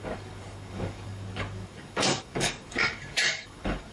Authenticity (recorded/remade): remade